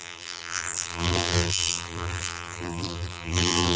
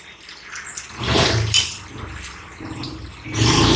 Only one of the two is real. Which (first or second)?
second